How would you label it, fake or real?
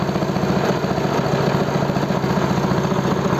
real